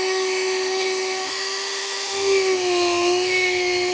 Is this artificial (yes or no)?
yes